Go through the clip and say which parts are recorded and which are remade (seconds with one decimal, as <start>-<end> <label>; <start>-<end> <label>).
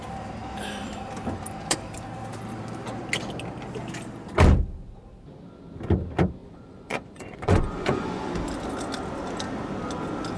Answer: 0.0-6.4 recorded; 6.4-8.3 remade; 8.3-10.4 recorded